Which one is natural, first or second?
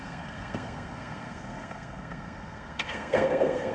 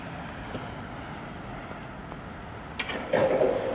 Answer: second